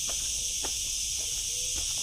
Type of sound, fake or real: real